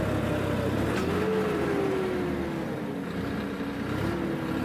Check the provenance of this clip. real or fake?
real